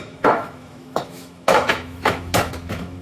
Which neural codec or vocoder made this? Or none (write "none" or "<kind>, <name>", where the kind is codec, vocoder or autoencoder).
autoencoder, DAC-VAE